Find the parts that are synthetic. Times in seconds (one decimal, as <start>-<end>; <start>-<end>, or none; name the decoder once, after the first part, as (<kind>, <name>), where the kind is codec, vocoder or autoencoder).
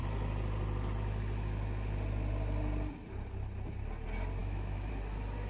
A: 4.4-4.9 (autoencoder, DAC-VAE)